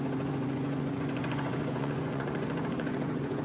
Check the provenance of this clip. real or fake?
fake